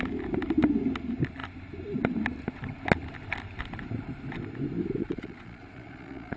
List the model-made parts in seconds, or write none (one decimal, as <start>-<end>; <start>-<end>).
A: 5.0-6.4